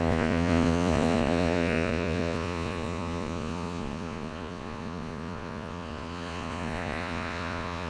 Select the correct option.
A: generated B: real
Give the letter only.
A